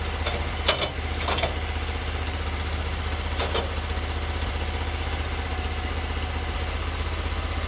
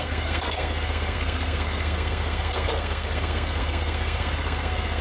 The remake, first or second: second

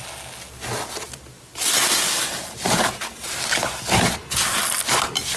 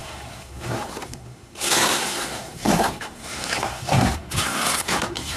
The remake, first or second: second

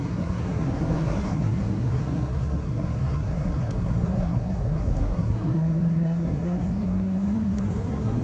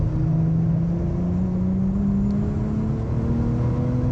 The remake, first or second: first